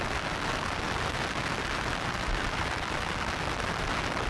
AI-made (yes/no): no